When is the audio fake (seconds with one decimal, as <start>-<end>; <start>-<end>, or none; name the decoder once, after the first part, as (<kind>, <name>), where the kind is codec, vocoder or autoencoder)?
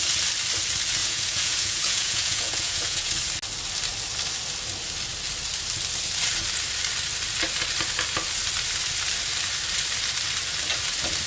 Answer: 1.0-3.1 (vocoder, Vocos)